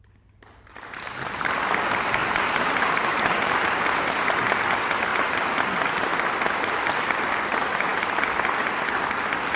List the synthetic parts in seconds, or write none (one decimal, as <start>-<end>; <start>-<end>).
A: 2.2-4.1; 5.1-5.6